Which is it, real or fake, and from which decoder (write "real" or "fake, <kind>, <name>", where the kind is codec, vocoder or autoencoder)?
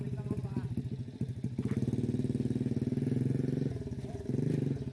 real